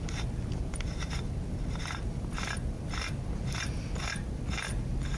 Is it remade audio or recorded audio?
recorded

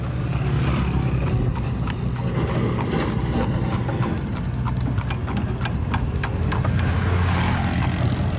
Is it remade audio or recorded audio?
recorded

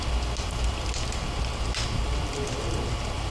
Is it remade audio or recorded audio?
recorded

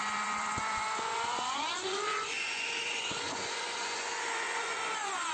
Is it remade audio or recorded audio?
remade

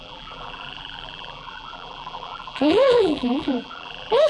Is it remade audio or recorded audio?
remade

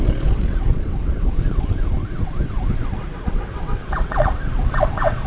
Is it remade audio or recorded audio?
remade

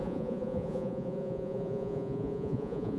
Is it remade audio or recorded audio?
remade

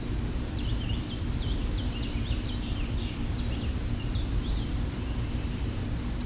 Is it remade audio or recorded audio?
remade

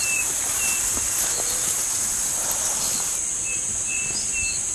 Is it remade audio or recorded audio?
recorded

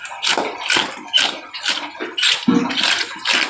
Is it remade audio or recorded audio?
recorded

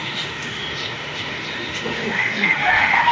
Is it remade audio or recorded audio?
remade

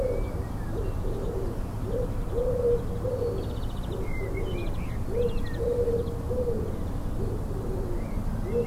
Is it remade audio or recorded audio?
recorded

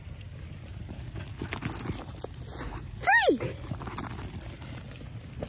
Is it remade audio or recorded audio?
recorded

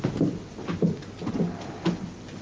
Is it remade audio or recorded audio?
recorded